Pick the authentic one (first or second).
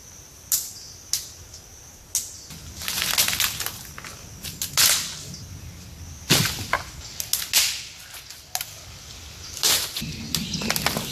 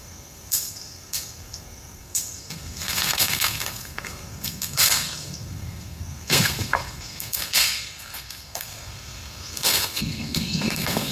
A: first